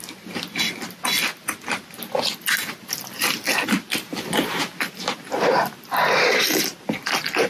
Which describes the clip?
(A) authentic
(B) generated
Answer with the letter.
A